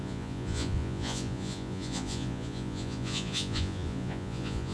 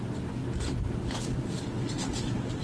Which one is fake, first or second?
first